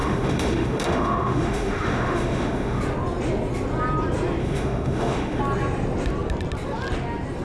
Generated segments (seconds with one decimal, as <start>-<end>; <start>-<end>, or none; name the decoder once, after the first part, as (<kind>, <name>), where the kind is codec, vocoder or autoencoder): 0.0-2.8 (autoencoder, DAC-VAE); 4.4-5.4